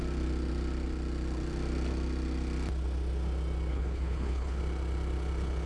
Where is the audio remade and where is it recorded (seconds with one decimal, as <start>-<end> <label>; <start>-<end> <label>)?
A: 0.0-3.7 recorded; 3.7-4.6 remade; 4.6-5.7 recorded